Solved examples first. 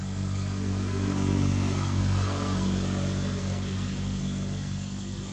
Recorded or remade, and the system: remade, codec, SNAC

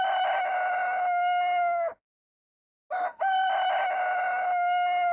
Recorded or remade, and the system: recorded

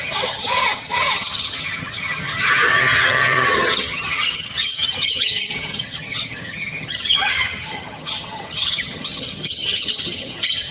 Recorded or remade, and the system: remade, vocoder, HiFi-GAN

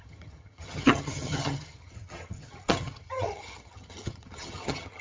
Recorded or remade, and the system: remade, vocoder, HiFi-GAN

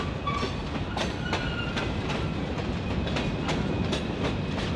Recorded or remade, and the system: recorded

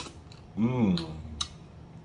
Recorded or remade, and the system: recorded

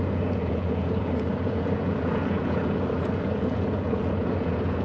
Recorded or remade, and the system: remade, vocoder, Vocos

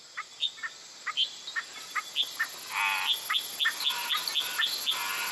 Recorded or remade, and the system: recorded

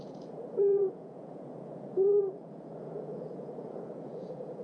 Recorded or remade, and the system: remade, vocoder, Vocos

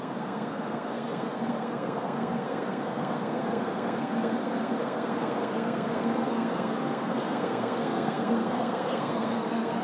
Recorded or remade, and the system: remade, codec, SNAC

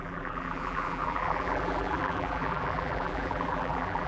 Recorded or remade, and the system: remade, vocoder, BigVGAN v2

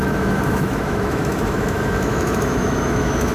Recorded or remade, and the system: remade, autoencoder, DAC-VAE